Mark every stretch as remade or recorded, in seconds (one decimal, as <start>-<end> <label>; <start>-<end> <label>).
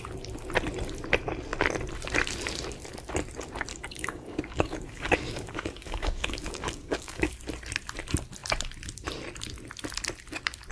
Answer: 0.0-3.7 recorded; 3.7-7.3 remade; 7.3-10.7 recorded